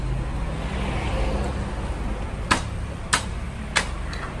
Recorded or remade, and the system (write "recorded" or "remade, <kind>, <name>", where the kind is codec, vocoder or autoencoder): recorded